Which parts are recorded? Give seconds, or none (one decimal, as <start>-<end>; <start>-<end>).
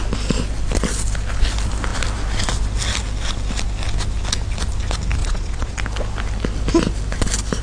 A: 0.0-5.2; 5.8-7.6